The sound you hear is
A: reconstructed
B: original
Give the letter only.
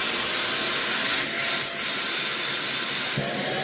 B